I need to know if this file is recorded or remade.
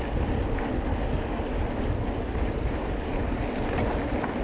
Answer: recorded